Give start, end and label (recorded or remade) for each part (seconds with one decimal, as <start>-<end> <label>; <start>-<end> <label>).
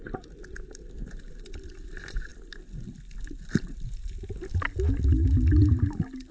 0.0-6.3 recorded